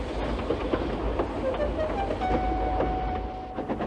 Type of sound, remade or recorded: recorded